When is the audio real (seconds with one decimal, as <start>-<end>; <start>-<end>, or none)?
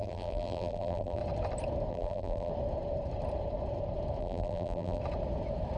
1.2-1.9; 2.5-4.2; 5.0-5.8